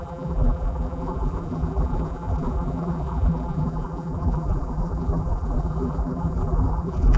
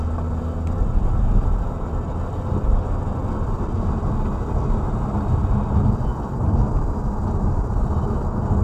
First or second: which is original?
second